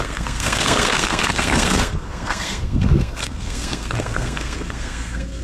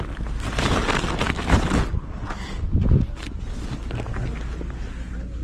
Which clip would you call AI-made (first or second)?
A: first